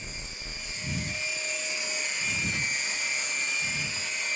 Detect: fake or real real